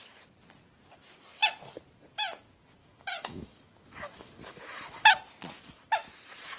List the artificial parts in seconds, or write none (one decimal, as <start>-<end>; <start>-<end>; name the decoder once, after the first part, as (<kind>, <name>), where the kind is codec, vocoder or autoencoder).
2.8-5.1 (autoencoder, DAC-VAE)